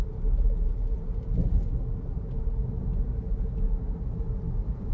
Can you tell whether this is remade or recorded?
recorded